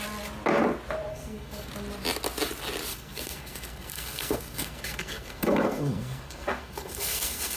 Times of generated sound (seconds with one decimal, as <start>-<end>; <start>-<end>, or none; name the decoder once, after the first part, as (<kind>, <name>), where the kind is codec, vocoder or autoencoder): 1.1-1.7 (codec, SNAC); 2.9-7.6